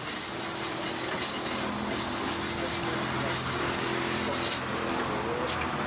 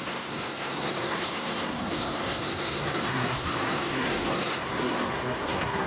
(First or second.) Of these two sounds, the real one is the first